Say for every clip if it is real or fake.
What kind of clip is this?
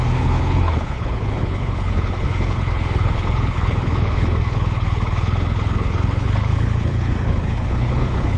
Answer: fake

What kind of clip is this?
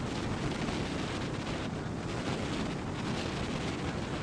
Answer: real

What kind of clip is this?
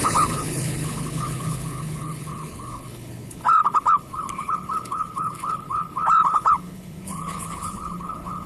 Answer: fake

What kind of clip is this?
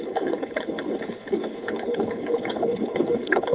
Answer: fake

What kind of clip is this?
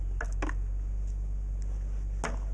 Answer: real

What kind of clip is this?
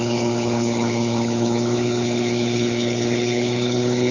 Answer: fake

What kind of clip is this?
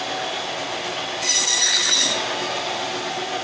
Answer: real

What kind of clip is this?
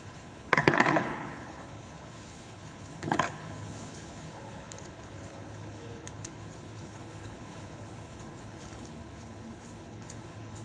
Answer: fake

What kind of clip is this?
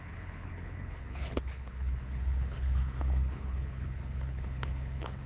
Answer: fake